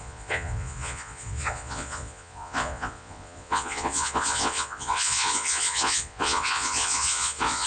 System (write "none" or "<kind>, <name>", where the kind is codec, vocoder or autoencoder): vocoder, Vocos